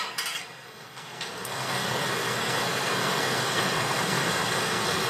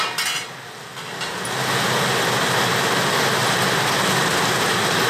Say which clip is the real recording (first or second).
second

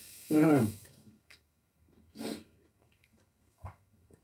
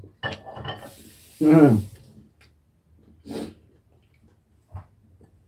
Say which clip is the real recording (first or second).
second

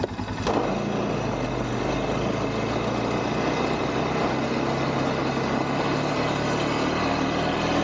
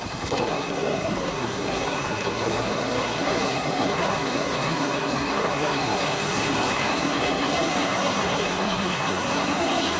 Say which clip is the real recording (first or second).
first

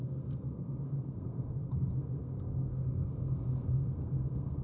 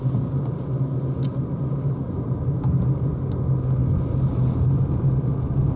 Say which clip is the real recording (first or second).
second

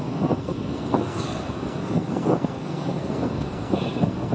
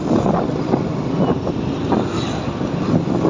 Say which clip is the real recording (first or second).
second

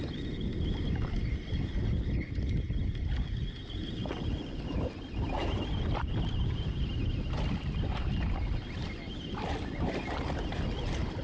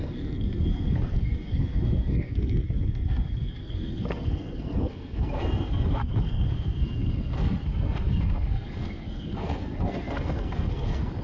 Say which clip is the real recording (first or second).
first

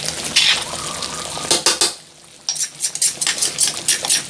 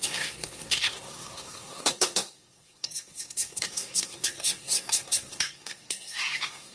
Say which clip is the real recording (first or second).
first